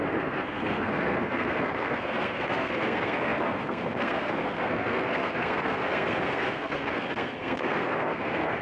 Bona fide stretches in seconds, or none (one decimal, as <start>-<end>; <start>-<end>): none